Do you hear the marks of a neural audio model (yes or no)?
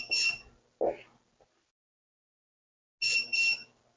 no